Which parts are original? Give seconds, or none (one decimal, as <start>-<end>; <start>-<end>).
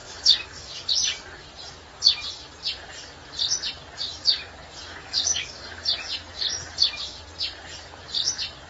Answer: 0.9-4.9; 5.8-8.7